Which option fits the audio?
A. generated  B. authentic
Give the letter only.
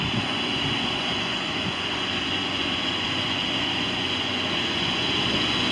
A